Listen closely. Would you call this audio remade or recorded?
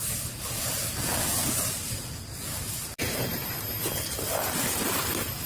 remade